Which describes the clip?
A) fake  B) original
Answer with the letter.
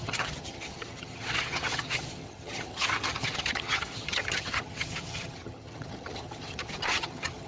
A